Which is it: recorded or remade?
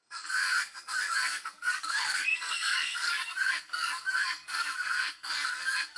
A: remade